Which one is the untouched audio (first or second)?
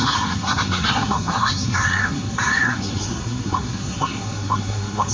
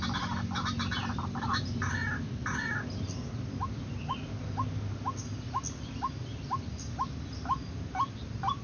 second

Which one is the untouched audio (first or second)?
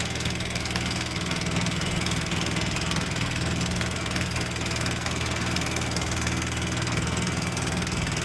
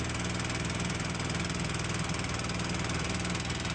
second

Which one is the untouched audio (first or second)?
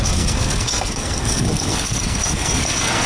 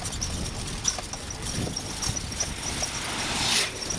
second